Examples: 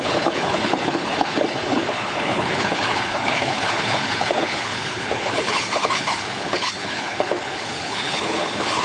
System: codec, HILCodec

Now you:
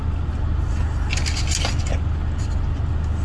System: none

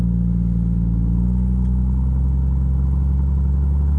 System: none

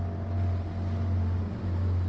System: none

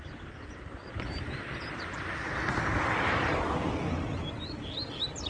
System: none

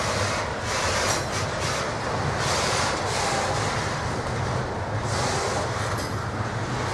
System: none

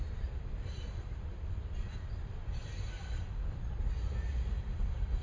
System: none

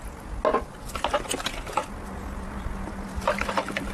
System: none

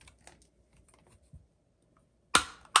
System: none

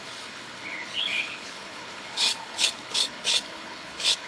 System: codec, HILCodec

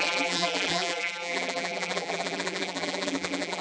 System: vocoder, BigVGAN v2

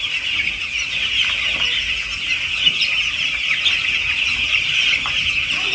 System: none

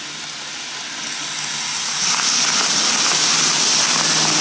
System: none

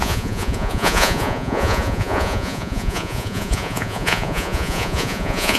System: vocoder, Vocos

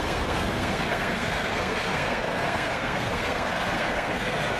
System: codec, SNAC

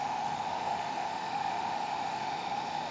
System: autoencoder, DAC-VAE